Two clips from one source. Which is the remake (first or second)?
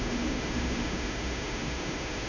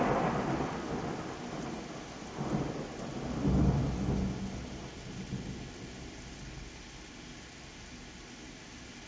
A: first